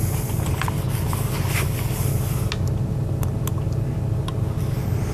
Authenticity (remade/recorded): recorded